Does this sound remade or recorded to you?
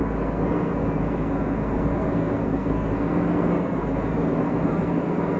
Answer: remade